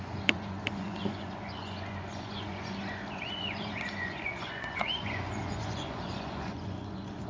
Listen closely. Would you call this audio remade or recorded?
remade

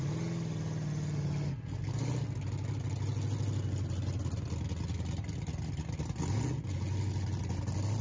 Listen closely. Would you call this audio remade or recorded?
recorded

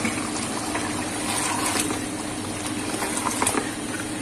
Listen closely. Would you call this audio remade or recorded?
recorded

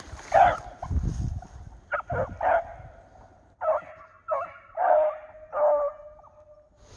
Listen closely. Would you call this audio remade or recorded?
recorded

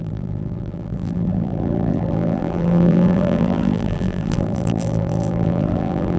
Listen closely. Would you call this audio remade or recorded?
remade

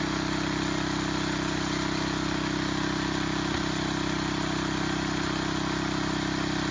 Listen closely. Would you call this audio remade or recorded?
recorded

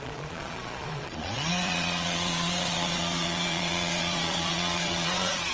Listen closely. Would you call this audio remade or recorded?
remade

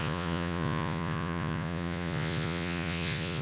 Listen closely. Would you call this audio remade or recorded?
remade